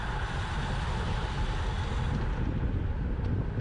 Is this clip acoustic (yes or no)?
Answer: yes